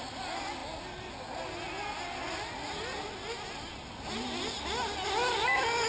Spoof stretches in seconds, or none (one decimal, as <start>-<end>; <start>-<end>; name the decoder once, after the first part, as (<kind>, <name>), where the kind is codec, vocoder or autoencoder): none